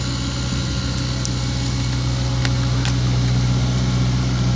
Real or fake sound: real